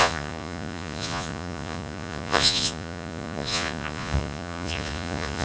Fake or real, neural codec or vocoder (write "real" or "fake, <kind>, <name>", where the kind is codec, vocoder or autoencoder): fake, vocoder, Vocos